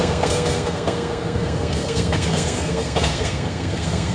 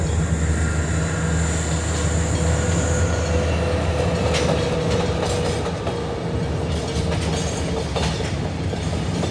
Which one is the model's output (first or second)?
first